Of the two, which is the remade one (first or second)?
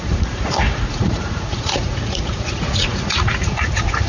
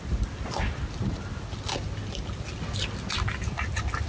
first